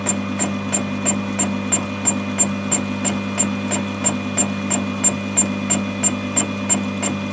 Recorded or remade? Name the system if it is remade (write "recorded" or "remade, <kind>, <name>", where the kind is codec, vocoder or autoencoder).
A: recorded